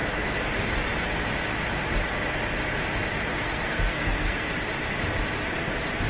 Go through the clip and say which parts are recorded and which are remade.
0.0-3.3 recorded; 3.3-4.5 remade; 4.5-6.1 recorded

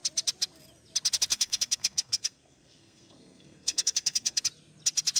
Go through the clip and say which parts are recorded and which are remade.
0.0-1.3 recorded; 1.3-4.4 remade; 4.4-5.2 recorded

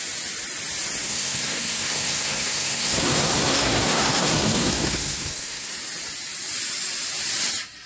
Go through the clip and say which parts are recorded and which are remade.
0.0-1.0 recorded; 1.0-5.7 remade; 5.7-7.9 recorded

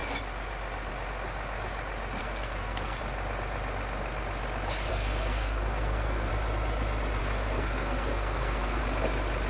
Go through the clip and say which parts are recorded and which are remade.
0.0-2.2 recorded; 2.2-3.0 remade; 3.0-4.9 recorded; 4.9-6.3 remade; 6.3-7.2 recorded; 7.2-8.8 remade; 8.8-9.5 recorded